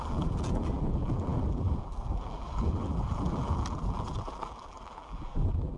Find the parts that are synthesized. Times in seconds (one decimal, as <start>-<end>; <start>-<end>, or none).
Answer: 0.0-5.8